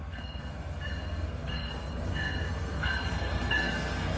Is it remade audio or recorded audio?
remade